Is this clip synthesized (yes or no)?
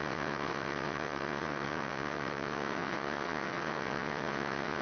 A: yes